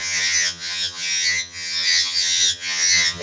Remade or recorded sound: remade